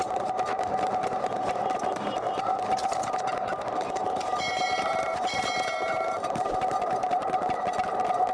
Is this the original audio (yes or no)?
no